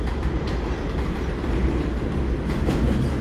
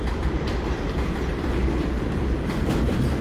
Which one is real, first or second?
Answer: first